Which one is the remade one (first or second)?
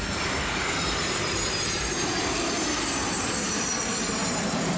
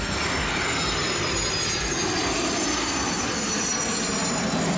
first